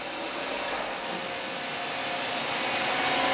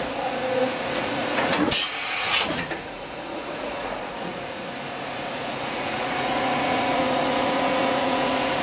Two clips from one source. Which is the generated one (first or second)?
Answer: second